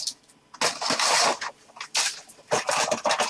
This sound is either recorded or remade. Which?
recorded